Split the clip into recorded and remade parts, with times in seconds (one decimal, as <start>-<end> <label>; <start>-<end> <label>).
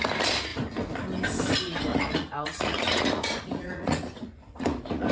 0.0-1.9 recorded; 1.9-5.1 remade